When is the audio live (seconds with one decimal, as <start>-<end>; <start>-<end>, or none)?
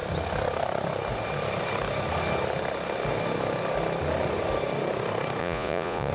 0.0-5.4